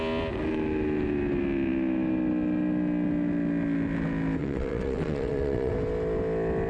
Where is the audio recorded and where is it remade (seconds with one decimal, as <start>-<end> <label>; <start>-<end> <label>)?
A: 0.0-4.4 recorded; 4.4-5.7 remade; 5.7-6.7 recorded